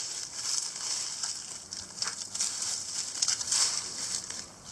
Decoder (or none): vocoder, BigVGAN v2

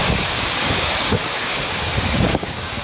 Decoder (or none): codec, DAC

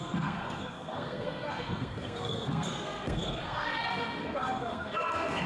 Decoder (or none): codec, SNAC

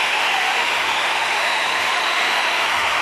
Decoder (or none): autoencoder, DAC-VAE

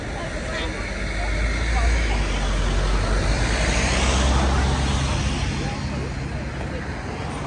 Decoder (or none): none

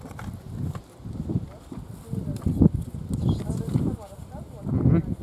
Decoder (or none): none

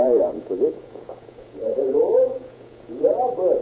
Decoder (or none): vocoder, Vocos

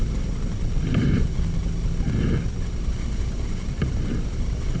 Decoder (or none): none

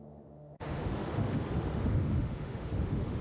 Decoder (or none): autoencoder, DAC-VAE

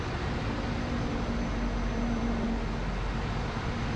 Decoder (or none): none